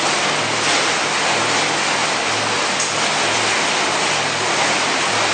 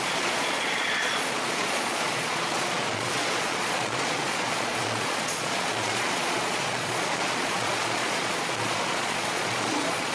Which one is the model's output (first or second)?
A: second